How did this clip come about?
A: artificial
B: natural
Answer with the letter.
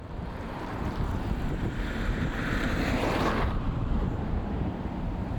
A